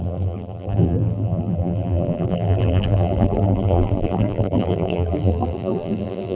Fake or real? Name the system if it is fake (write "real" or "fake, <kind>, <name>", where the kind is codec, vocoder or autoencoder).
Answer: fake, vocoder, BigVGAN v2